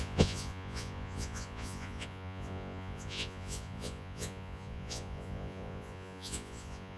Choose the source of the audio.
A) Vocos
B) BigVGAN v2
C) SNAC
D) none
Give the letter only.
A